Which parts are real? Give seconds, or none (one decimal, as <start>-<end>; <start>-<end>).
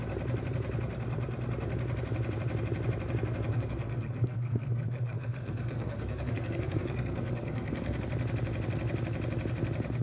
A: 0.0-3.5; 8.0-10.0